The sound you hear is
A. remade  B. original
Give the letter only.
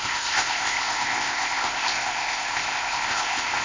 A